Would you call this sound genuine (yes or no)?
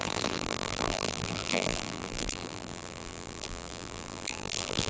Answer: no